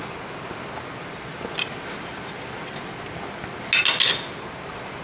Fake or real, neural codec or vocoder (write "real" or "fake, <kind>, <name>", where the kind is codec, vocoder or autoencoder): real